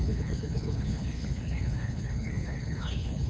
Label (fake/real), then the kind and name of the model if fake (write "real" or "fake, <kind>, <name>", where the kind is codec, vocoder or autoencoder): fake, codec, HILCodec